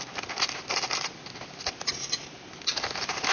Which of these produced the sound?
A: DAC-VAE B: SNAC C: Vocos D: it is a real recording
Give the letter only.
D